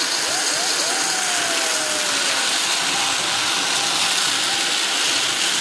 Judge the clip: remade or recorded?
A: recorded